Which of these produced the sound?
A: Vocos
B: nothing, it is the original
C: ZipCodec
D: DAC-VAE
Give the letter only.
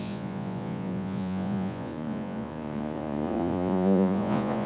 A